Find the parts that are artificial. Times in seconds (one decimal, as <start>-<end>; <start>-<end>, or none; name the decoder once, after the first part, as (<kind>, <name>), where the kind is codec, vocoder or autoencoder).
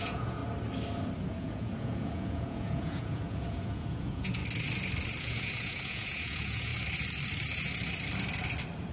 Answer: 0.0-0.4 (vocoder, Vocos); 1.3-4.4; 5.2-6.7